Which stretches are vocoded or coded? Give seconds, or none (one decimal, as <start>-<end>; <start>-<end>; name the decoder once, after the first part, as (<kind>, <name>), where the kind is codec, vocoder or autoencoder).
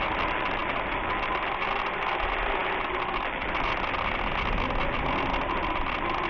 none